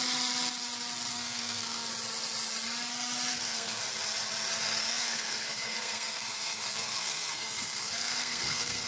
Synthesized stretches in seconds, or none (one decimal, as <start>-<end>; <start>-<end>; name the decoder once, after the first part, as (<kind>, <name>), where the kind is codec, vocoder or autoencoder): 1.1-1.9 (codec, SNAC); 3.3-3.8; 4.8-8.9